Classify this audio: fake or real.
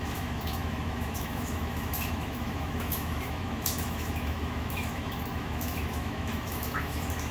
fake